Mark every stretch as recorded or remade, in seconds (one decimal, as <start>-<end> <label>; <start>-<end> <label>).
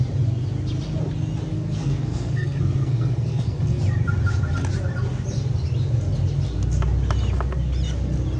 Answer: 0.0-1.5 recorded; 1.5-3.8 remade; 3.8-8.4 recorded